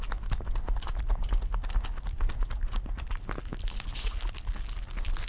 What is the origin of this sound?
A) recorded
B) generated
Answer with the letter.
A